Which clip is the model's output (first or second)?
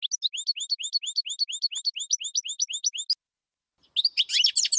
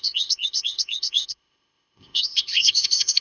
second